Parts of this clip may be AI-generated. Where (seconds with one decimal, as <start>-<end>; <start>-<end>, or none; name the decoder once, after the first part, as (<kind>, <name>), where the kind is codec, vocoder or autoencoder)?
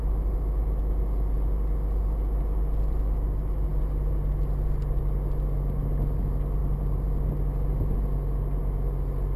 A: none